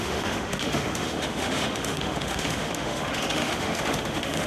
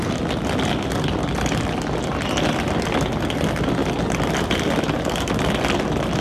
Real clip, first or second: second